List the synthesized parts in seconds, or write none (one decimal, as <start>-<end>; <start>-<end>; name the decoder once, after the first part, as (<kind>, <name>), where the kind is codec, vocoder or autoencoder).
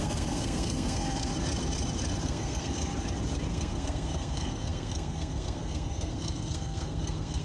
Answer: 0.0-1.3 (codec, SNAC); 2.2-2.9; 3.5-7.4